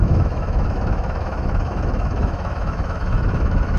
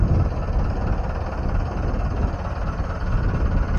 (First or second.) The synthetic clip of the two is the first